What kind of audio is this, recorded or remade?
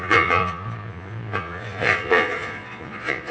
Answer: remade